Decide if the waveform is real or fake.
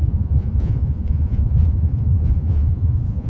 fake